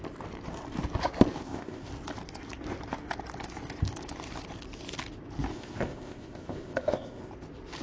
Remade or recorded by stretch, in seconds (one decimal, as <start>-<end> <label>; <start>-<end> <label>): 0.0-1.4 recorded; 1.4-1.9 remade; 1.9-5.5 recorded; 5.5-7.3 remade; 7.3-7.8 recorded